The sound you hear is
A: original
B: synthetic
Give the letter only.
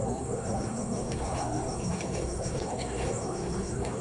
B